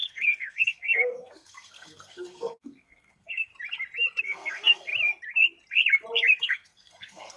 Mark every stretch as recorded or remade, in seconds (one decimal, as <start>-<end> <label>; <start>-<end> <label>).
0.0-3.5 remade; 3.5-4.2 recorded; 4.2-4.9 remade; 4.9-6.4 recorded; 6.4-7.4 remade